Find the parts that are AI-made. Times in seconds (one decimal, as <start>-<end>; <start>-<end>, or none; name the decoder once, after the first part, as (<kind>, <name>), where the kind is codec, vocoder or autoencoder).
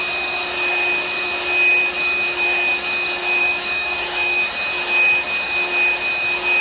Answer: 3.4-4.4 (codec, DAC)